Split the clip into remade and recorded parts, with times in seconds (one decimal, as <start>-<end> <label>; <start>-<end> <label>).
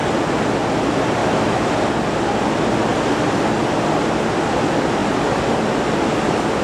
0.0-1.2 recorded; 1.2-1.7 remade; 1.7-6.6 recorded